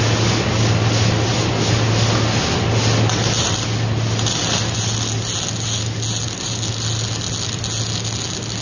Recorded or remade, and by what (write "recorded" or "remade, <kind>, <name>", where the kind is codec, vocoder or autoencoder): recorded